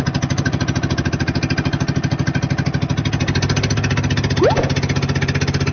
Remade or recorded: recorded